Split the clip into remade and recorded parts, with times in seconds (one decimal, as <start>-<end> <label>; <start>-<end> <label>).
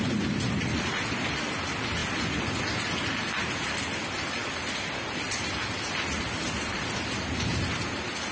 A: 0.0-8.3 recorded